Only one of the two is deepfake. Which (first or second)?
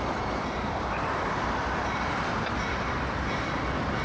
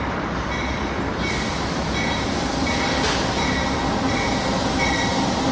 first